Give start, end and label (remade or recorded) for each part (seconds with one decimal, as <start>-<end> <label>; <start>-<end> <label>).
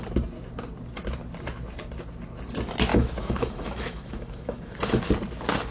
0.0-2.9 recorded; 2.9-5.1 remade; 5.1-5.7 recorded